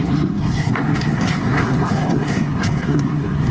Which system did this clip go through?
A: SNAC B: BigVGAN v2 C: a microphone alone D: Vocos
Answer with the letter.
A